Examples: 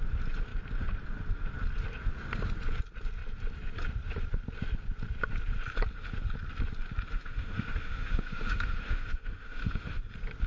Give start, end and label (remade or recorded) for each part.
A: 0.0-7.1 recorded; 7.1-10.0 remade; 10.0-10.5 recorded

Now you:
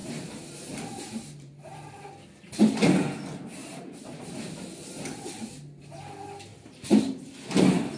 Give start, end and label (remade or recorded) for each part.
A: 0.0-2.1 remade; 2.1-3.6 recorded; 3.6-4.4 remade; 4.4-6.5 recorded; 6.5-7.3 remade; 7.3-8.0 recorded

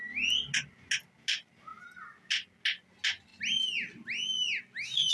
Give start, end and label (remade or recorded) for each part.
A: 0.0-5.1 recorded

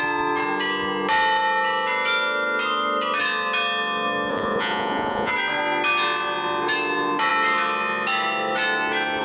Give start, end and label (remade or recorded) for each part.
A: 0.0-4.3 recorded; 4.3-5.3 remade; 5.3-9.2 recorded

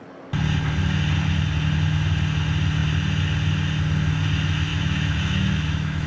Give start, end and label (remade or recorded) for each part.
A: 0.0-4.7 recorded; 4.7-6.1 remade

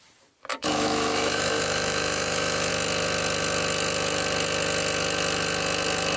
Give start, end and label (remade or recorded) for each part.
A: 0.0-0.5 recorded; 0.5-2.7 remade; 2.7-6.2 recorded

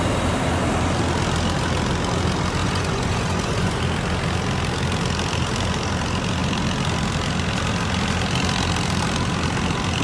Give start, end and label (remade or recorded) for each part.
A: 0.0-2.6 recorded; 2.6-3.8 remade; 3.8-10.0 recorded